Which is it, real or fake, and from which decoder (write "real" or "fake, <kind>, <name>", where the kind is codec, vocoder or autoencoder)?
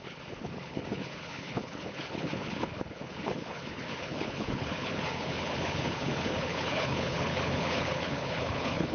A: fake, codec, HILCodec